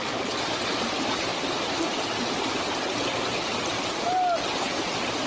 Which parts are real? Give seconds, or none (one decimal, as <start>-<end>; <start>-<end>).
0.0-5.3